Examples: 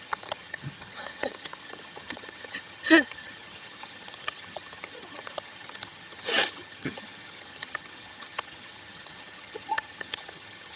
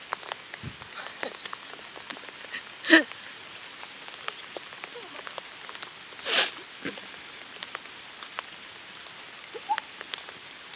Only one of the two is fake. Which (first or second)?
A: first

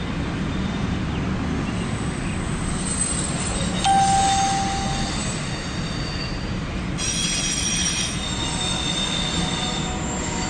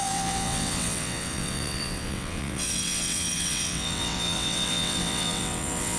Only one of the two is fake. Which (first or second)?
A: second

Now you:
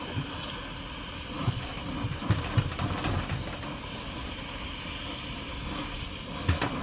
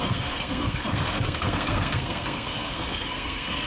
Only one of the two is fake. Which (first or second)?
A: second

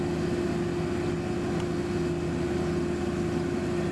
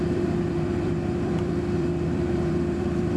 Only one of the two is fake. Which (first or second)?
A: second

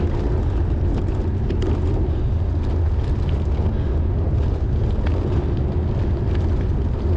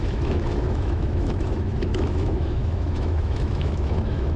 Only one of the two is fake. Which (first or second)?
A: second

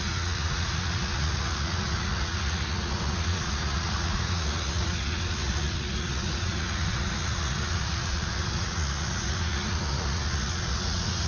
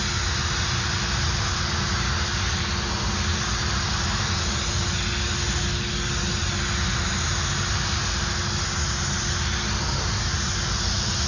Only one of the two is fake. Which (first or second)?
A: first